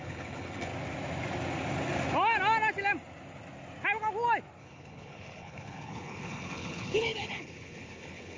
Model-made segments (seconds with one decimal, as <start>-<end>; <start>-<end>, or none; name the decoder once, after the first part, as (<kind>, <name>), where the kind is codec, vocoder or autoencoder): 0.0-0.7 (codec, HILCodec); 4.6-8.4